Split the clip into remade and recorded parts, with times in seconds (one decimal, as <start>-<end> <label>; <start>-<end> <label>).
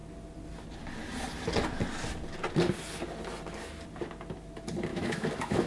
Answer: 0.0-4.9 recorded; 4.9-5.7 remade